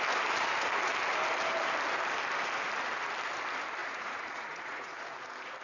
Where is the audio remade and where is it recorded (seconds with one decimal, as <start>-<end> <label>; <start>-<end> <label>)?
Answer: 0.0-3.8 recorded; 3.8-5.0 remade; 5.0-5.6 recorded